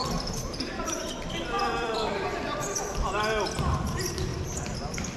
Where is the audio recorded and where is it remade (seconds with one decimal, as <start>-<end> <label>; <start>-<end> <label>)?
0.0-3.1 remade; 3.1-4.3 recorded; 4.3-5.2 remade